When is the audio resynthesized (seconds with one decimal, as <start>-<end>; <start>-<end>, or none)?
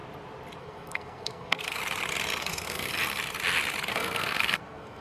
0.6-1.8; 2.4-2.9; 3.9-5.0